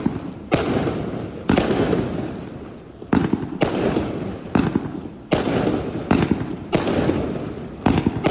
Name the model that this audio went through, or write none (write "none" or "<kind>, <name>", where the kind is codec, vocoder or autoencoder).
none